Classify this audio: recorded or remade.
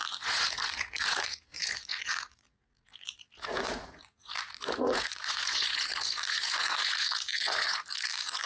remade